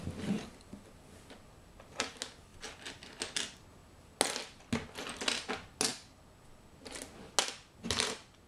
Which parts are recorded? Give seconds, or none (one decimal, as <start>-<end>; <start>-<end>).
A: 0.0-8.5